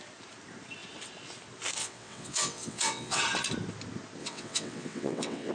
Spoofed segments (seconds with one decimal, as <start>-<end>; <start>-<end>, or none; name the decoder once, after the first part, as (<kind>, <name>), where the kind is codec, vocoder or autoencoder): 1.8-3.2 (vocoder, WaveNeXt); 4.2-5.5